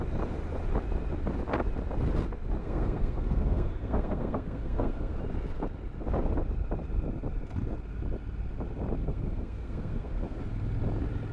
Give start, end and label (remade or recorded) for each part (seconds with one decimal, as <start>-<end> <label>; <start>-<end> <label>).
0.0-2.6 recorded; 2.6-5.2 remade; 5.2-9.0 recorded; 9.0-10.4 remade; 10.4-11.3 recorded